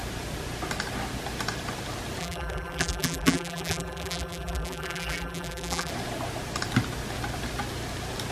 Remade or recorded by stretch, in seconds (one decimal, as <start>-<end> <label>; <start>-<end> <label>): 0.0-2.2 recorded; 2.2-5.9 remade; 5.9-8.3 recorded